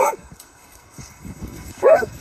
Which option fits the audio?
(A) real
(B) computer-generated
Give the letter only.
B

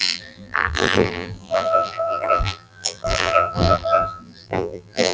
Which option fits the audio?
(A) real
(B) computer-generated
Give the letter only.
B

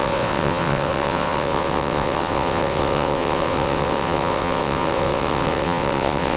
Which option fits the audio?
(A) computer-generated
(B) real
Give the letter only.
A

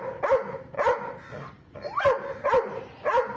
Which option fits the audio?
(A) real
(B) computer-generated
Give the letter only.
A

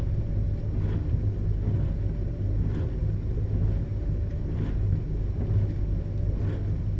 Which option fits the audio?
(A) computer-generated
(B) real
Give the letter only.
B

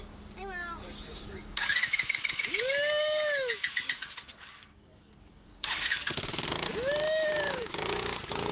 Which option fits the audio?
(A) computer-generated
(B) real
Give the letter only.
A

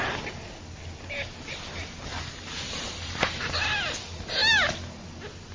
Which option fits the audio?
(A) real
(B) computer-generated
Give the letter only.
A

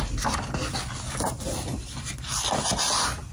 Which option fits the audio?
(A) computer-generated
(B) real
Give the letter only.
B